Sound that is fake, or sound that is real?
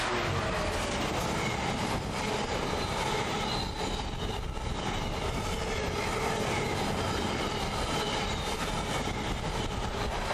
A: real